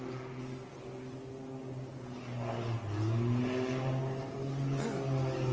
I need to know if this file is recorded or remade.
recorded